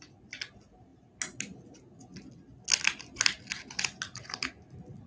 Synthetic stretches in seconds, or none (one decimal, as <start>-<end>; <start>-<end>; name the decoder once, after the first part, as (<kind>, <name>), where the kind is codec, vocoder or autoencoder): none

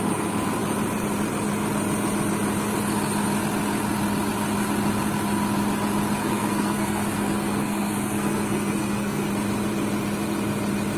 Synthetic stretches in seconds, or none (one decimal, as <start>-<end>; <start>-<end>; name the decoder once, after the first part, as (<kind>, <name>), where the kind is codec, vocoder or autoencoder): 6.2-9.3 (codec, SNAC)

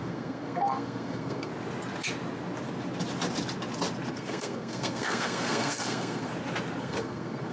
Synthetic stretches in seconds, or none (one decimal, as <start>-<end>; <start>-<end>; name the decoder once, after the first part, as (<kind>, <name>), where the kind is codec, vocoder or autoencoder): 0.0-1.5 (codec, SNAC); 4.1-6.3; 6.8-7.5